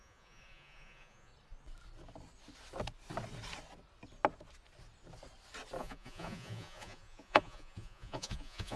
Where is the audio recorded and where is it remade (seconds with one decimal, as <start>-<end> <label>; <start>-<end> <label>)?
0.0-1.3 remade; 1.3-5.8 recorded; 5.8-8.8 remade